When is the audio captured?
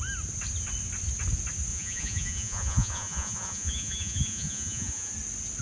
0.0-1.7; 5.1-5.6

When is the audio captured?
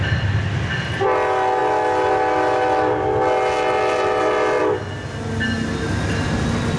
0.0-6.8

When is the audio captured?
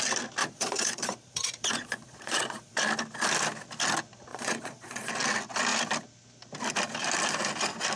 0.0-0.4; 2.8-4.3; 5.1-8.0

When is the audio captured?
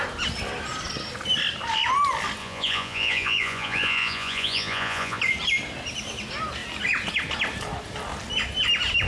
0.0-2.4; 5.2-9.1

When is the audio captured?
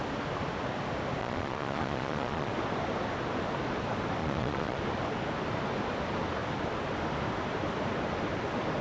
0.0-1.2; 2.5-4.2; 4.8-8.8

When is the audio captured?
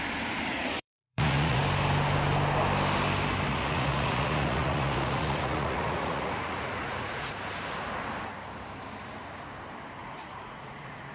0.0-0.5; 1.6-3.5; 7.4-10.0